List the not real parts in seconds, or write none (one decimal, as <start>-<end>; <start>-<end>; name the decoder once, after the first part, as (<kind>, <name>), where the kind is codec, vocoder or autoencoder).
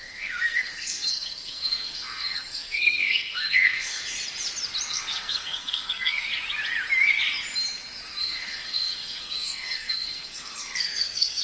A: 0.0-4.0 (codec, SNAC); 4.9-6.3; 8.2-11.4